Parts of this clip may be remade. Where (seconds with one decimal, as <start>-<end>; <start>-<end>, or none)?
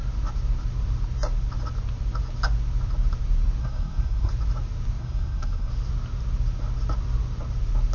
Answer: 3.6-4.3; 5.0-5.7